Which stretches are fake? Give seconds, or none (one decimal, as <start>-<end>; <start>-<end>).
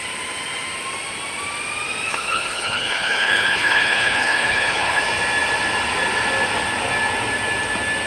2.1-5.0